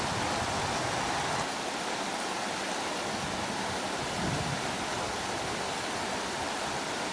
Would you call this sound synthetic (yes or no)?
no